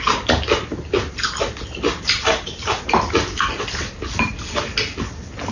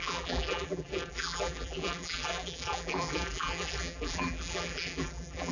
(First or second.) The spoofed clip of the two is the second